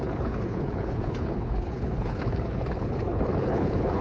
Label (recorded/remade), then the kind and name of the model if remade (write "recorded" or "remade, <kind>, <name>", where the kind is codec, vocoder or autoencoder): remade, codec, HILCodec